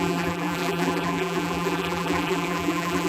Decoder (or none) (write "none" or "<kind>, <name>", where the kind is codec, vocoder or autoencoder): vocoder, BigVGAN v2